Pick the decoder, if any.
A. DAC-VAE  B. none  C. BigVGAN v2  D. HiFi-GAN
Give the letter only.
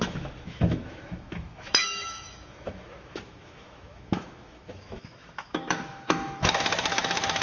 A